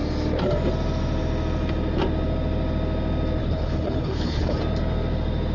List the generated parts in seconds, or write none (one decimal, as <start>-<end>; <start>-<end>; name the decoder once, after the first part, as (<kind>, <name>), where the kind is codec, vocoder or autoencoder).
3.4-4.6 (codec, HILCodec)